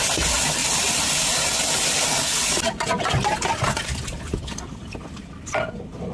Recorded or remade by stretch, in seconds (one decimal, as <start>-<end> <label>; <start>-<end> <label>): 0.0-6.1 recorded